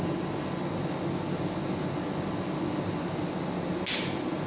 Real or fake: real